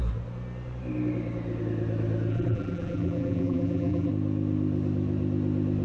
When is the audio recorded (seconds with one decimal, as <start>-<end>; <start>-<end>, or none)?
0.0-2.3; 4.1-5.8